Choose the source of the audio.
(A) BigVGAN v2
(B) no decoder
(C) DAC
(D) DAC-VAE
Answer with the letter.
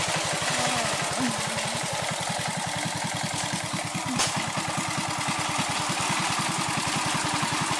B